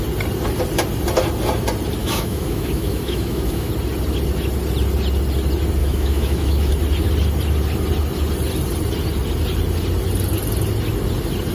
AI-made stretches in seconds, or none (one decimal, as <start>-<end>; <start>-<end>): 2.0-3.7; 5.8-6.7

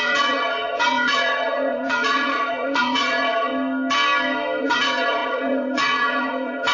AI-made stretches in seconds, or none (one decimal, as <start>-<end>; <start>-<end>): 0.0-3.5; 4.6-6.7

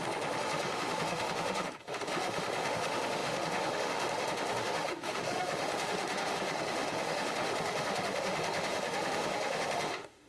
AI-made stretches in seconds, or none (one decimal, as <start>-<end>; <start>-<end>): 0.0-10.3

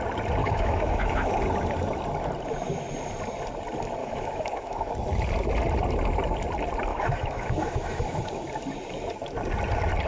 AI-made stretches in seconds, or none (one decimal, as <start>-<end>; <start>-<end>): 0.4-1.3; 4.0-4.9; 6.9-8.2

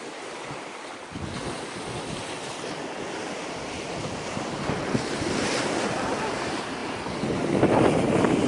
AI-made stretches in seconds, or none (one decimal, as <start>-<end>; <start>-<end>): none

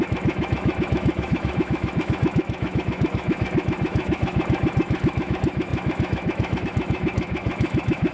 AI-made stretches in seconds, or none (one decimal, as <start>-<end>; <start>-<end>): 0.0-8.1

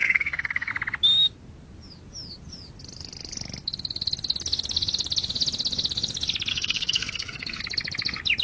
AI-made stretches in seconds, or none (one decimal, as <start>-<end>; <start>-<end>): 0.0-0.7; 6.5-7.6